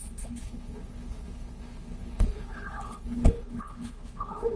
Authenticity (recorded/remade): remade